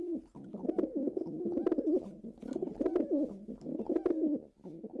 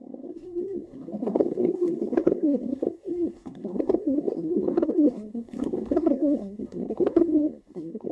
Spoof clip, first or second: second